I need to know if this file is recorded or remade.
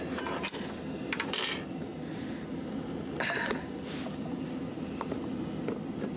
recorded